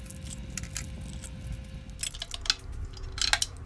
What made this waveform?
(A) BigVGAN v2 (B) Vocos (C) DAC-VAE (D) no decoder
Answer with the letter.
D